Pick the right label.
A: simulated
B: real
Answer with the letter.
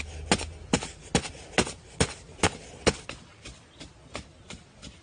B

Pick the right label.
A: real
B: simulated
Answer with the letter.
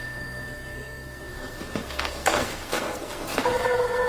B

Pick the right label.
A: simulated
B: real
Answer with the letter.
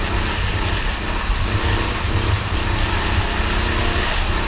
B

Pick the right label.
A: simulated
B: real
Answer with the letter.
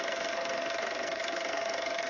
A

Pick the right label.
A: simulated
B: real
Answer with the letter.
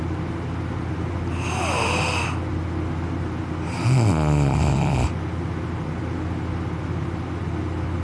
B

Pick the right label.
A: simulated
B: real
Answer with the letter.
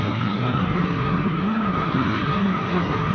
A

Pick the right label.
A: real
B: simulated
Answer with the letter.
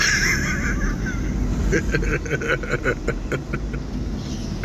A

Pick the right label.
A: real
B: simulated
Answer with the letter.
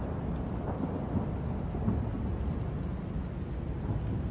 A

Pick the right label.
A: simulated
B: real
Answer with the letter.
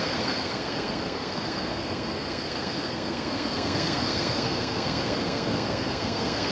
A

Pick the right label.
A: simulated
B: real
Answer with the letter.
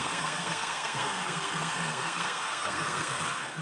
A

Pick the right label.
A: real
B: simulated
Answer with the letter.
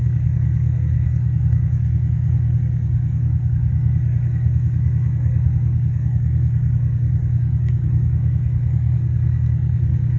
B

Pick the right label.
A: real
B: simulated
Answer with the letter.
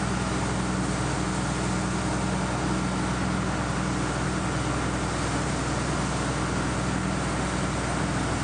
A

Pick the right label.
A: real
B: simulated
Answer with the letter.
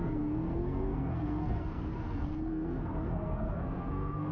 B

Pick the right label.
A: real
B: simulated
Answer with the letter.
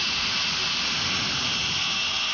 A